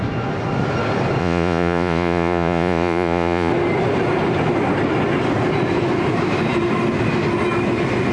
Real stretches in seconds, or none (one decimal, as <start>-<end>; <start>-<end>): 0.0-1.2; 3.5-8.1